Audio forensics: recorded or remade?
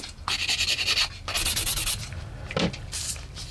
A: recorded